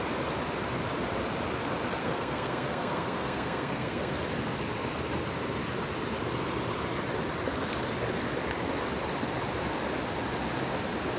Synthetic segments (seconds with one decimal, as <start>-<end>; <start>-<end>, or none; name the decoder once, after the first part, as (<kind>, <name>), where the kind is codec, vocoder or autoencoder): 2.0-4.1 (codec, SNAC)